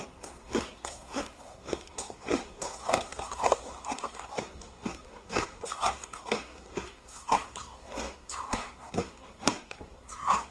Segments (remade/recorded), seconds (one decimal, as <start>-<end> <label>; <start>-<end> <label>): 0.0-10.5 remade